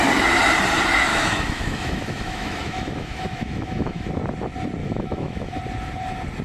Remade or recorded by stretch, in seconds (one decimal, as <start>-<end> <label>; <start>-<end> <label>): 0.0-1.1 recorded; 1.1-4.1 remade; 4.1-4.8 recorded; 4.8-5.6 remade; 5.6-6.4 recorded